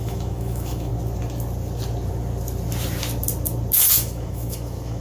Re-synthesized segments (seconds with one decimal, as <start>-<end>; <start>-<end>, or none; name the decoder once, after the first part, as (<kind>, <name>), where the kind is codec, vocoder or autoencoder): 0.0-0.9 (autoencoder, DAC-VAE); 3.9-5.0